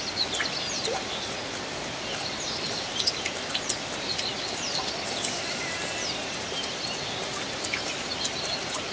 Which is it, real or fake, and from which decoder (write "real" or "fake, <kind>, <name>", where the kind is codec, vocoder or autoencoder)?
real